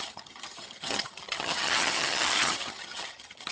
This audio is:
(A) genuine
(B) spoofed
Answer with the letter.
B